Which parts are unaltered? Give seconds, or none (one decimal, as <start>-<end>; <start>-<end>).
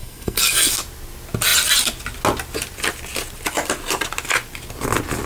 0.7-5.3